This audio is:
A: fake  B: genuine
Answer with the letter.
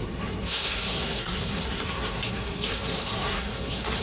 A